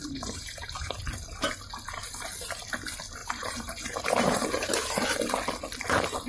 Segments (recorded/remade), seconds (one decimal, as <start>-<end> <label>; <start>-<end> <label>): 0.0-1.0 remade; 1.0-3.2 recorded; 3.2-4.7 remade; 4.7-6.3 recorded